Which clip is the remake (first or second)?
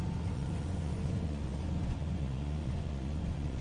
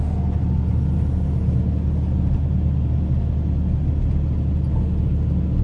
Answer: first